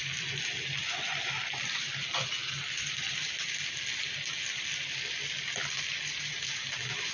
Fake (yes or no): no